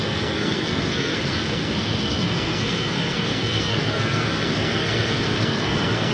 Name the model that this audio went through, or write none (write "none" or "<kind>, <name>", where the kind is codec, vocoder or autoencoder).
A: codec, SNAC